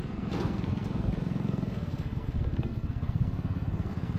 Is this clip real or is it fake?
fake